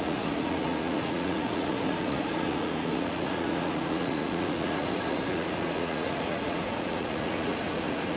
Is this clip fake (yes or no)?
yes